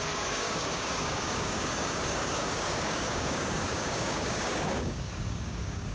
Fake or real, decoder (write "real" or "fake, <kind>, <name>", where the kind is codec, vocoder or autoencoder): fake, codec, DAC